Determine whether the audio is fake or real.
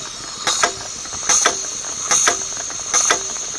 real